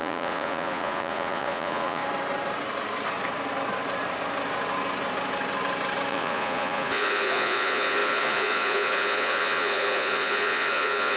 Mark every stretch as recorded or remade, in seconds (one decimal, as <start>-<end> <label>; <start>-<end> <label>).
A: 0.0-2.0 remade; 2.0-6.1 recorded; 6.1-11.2 remade